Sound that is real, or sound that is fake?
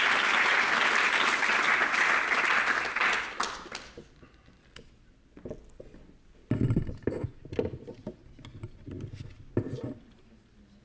real